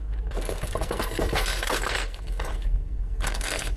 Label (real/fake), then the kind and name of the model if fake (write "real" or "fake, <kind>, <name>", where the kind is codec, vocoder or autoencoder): fake, codec, SNAC